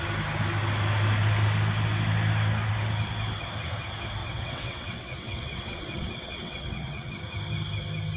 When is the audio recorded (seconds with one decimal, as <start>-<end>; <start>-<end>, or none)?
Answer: 0.0-4.2; 7.1-8.2

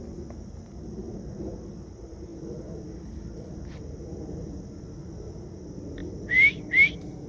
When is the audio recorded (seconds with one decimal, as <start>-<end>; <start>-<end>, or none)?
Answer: 0.0-7.3